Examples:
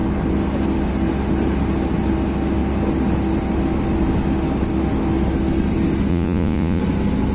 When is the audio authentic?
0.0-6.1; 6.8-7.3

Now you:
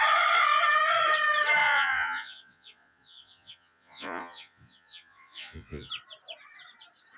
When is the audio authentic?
0.0-1.6; 5.9-7.2

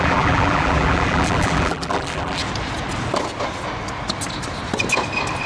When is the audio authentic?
2.4-5.5

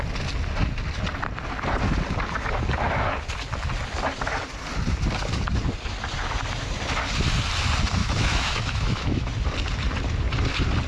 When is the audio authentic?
0.0-8.0; 9.3-10.9

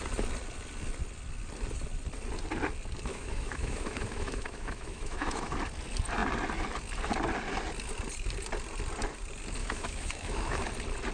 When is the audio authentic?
0.0-3.1; 5.5-9.6; 10.7-11.1

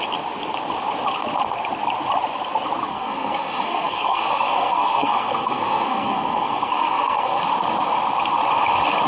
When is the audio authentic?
0.0-2.9; 7.4-9.1